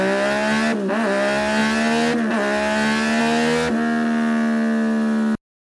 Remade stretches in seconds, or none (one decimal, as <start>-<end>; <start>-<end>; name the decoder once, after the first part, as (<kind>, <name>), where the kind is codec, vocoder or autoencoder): none